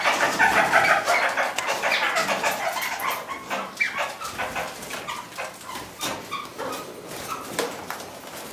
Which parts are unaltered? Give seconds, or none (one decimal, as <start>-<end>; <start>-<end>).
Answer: 0.4-5.5; 6.5-7.5